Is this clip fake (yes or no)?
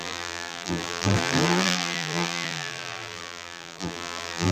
yes